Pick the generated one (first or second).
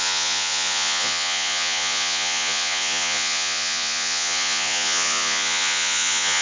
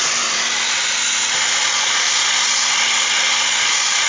first